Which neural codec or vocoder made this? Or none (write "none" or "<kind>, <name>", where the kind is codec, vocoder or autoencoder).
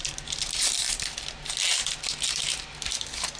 none